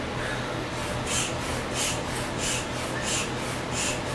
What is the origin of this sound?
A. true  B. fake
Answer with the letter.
A